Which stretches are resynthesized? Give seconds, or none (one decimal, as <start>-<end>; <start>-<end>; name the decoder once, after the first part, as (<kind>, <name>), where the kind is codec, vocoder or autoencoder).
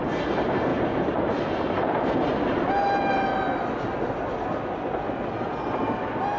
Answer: 0.7-1.8 (vocoder, BigVGAN v2)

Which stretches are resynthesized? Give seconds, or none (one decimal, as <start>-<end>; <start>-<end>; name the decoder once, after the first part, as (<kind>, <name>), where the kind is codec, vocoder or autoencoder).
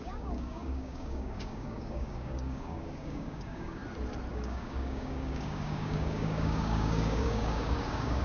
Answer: 0.0-3.8 (codec, DAC); 4.3-8.2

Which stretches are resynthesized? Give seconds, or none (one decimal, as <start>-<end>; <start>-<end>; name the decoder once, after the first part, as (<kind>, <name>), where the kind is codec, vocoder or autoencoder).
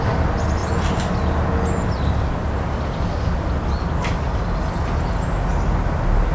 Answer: none